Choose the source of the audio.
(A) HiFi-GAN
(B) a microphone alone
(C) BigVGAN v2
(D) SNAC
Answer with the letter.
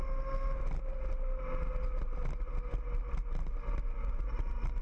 B